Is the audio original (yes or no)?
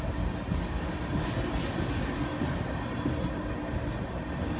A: yes